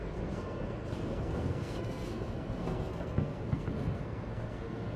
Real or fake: fake